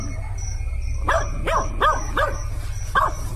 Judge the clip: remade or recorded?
recorded